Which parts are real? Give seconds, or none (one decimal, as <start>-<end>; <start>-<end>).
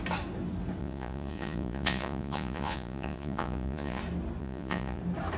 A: 0.0-0.8; 4.0-4.4; 5.0-5.4